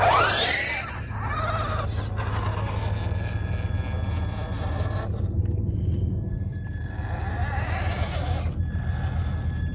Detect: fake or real real